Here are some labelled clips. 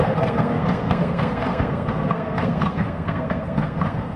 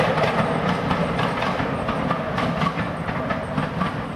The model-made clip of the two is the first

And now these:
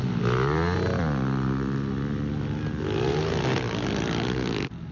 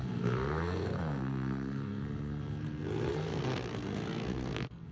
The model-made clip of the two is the second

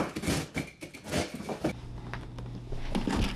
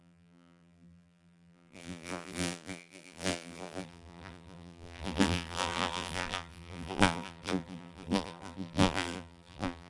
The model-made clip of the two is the second